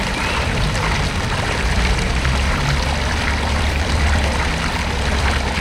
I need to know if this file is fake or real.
fake